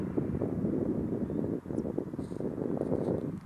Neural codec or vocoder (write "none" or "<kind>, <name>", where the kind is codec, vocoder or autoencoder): none